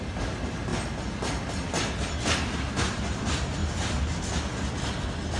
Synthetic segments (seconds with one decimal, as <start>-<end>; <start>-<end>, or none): none